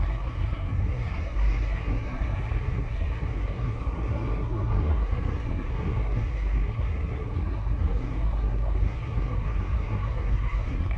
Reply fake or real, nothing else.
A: fake